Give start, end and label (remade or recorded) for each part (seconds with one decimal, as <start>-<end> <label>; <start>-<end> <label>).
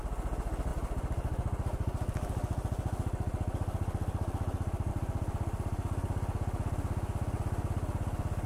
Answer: 0.0-8.5 recorded